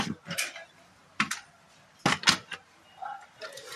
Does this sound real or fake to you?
real